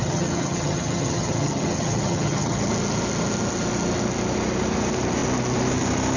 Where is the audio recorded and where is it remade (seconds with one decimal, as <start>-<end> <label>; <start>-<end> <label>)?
0.0-2.7 remade; 2.7-6.2 recorded